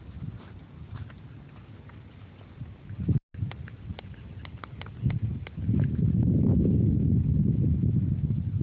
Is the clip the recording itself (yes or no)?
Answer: yes